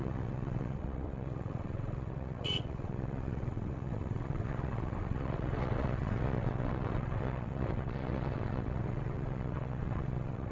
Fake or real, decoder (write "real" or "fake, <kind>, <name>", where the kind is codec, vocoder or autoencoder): fake, vocoder, WaveNeXt